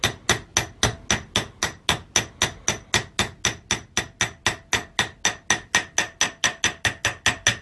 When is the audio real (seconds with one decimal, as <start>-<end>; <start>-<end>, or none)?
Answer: 0.0-7.6